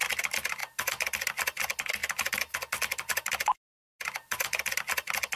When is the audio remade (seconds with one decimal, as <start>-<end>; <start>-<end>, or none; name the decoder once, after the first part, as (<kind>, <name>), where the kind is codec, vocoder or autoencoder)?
none